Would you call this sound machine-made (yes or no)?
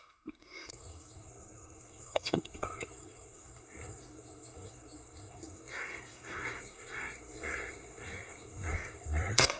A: yes